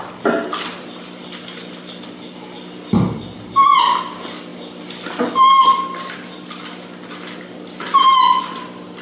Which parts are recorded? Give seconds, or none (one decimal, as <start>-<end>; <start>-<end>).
0.0-9.0